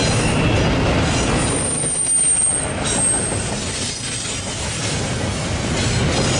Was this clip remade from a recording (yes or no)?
no